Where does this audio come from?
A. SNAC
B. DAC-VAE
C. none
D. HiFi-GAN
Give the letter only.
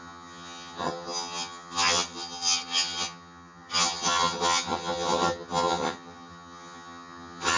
D